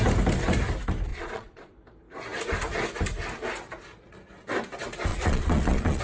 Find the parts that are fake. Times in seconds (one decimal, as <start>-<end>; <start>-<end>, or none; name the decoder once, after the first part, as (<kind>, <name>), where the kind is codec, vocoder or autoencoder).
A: 1.1-1.7 (vocoder, Vocos); 5.1-6.0